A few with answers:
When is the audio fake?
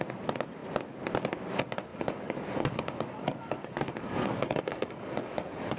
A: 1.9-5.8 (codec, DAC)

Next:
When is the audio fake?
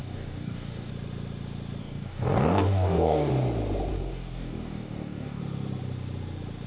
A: 0.0-0.9 (codec, DAC); 1.8-3.3; 3.9-5.4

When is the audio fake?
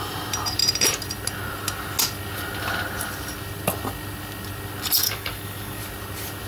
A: 5.0-5.8 (codec, DAC)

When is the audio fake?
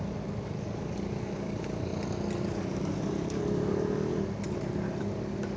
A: 0.0-1.9 (codec, DAC); 2.5-4.1; 5.0-5.6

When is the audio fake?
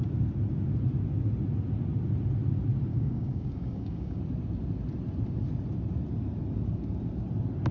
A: 2.9-4.2 (codec, DAC)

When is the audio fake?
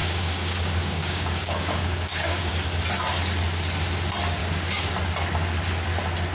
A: 0.0-2.5 (codec, DAC); 4.4-4.9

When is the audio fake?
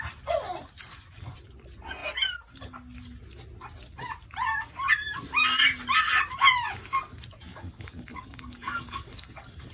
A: 7.5-9.7 (codec, DAC)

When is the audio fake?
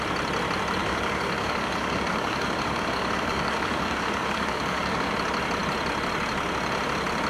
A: 0.8-5.1 (codec, DAC)